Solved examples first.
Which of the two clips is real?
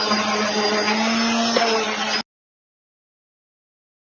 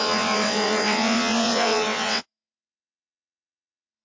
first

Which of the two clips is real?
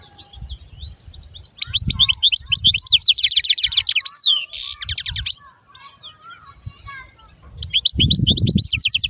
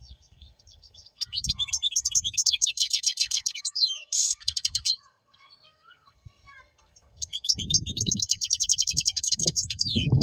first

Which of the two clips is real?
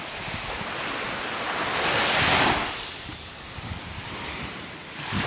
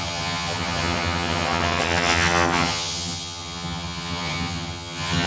first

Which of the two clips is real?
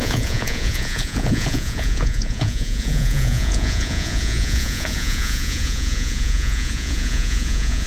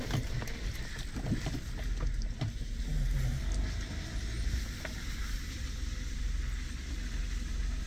second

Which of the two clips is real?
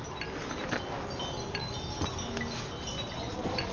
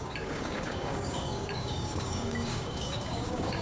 first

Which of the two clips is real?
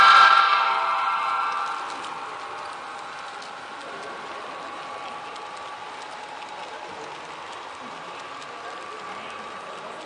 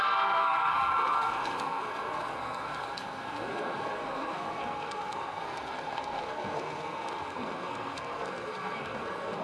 first